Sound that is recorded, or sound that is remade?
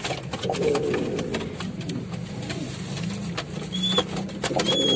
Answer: recorded